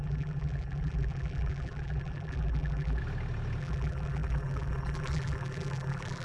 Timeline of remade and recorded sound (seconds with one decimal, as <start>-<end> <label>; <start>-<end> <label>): 0.0-3.0 remade; 3.0-3.6 recorded; 3.6-6.2 remade